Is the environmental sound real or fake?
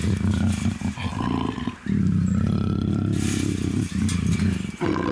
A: real